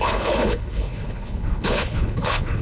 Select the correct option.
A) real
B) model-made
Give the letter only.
B